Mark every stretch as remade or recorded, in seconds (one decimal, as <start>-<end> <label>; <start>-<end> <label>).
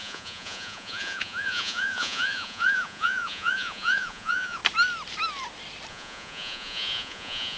0.0-4.6 remade; 4.6-5.9 recorded; 5.9-7.6 remade